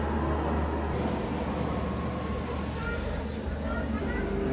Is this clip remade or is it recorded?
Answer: recorded